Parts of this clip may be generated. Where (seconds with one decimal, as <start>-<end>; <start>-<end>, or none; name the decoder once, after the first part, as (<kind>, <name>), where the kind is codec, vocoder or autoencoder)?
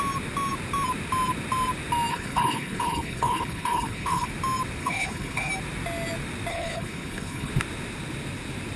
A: 2.1-4.3 (codec, HILCodec); 4.8-5.5; 6.5-7.5